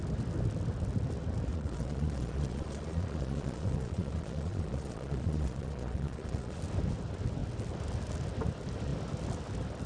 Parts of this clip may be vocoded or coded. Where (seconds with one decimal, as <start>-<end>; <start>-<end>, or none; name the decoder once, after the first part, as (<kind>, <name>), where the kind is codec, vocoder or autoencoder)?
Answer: 1.5-6.6 (vocoder, Vocos)